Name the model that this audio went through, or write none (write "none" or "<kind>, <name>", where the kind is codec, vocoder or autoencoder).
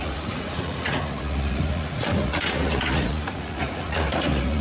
vocoder, Vocos